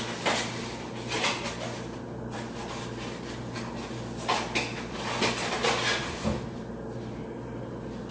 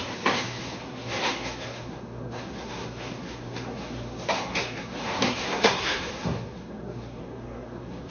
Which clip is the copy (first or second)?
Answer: second